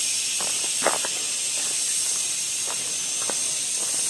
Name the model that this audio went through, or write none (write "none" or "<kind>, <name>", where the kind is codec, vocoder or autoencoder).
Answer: none